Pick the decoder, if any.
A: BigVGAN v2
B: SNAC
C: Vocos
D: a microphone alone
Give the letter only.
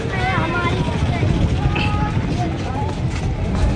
D